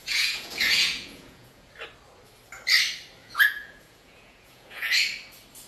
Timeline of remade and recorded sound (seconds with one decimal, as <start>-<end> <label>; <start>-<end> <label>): 0.0-1.7 remade; 1.7-3.2 recorded; 3.2-4.9 remade; 4.9-5.7 recorded

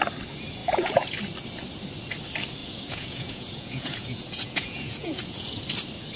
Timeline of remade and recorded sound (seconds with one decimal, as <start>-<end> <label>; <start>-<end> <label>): 0.0-0.6 recorded; 0.6-1.2 remade; 1.2-2.6 recorded; 2.6-5.6 remade; 5.6-6.2 recorded

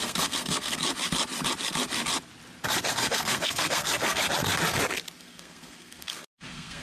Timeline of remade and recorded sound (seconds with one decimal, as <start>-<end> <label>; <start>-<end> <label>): 0.0-0.9 remade; 0.9-2.9 recorded; 2.9-4.2 remade; 4.2-5.2 recorded; 5.2-6.8 remade

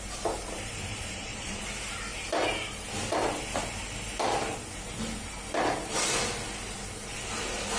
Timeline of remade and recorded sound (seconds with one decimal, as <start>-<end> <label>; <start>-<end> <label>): 0.0-0.9 recorded; 0.9-1.6 remade; 1.6-7.8 recorded

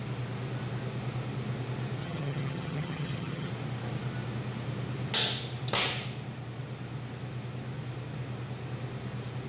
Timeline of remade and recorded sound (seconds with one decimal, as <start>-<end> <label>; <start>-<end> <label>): 0.0-2.0 recorded; 2.0-3.5 remade; 3.5-9.5 recorded

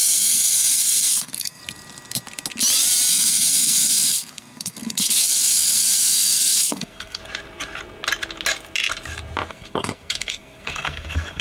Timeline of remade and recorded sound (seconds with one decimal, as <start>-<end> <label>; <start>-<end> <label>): 0.0-1.6 remade; 1.6-3.1 recorded; 3.1-7.2 remade; 7.2-9.5 recorded; 9.5-11.4 remade

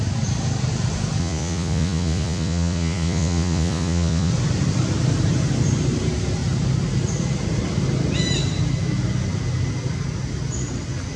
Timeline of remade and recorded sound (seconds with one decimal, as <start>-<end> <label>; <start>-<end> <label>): 0.0-1.2 recorded; 1.2-4.3 remade; 4.3-11.2 recorded

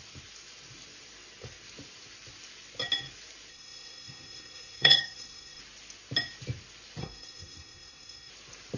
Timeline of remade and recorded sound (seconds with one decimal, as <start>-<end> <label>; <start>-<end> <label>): 0.0-3.5 recorded; 3.5-5.6 remade; 5.6-7.0 recorded; 7.0-8.3 remade; 8.3-8.8 recorded